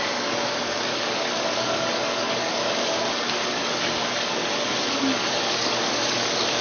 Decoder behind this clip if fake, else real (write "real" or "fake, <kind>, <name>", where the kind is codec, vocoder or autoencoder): fake, codec, DAC